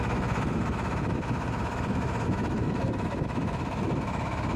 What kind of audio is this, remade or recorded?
remade